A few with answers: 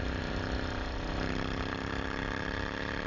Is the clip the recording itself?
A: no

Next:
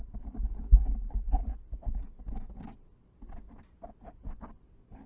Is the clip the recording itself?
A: yes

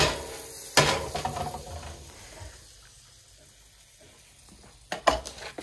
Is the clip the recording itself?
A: yes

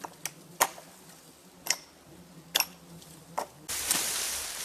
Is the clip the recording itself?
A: yes